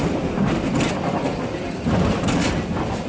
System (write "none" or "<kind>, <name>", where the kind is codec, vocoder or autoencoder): none